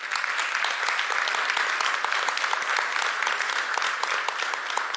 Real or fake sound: real